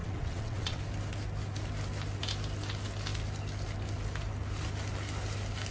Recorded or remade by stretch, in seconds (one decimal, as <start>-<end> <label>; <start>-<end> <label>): 0.0-0.8 remade; 0.8-5.7 recorded